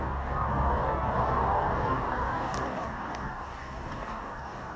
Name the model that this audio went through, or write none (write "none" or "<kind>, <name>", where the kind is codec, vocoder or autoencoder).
codec, DAC